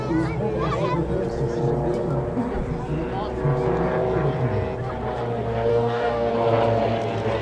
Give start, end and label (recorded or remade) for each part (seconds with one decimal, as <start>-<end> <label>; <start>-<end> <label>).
0.0-5.7 recorded; 5.7-6.3 remade; 6.3-7.4 recorded